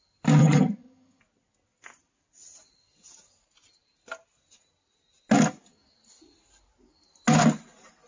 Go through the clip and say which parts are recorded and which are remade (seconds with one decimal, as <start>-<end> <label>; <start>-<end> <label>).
0.0-0.4 recorded; 0.4-1.2 remade; 1.2-8.1 recorded